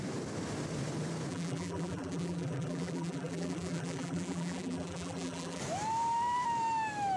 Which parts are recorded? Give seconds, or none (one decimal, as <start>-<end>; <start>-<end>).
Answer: 0.0-1.3; 5.6-7.2